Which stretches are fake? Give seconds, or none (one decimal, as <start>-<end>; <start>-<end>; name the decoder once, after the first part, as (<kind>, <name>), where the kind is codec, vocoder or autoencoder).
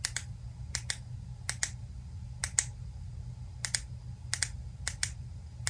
none